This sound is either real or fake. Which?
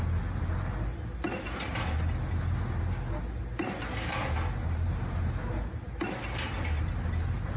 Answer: real